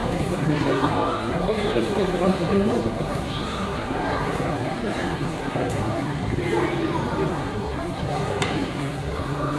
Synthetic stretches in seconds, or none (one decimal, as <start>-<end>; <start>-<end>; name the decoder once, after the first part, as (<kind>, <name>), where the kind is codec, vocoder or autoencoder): 0.0-6.4 (codec, SNAC); 7.3-9.6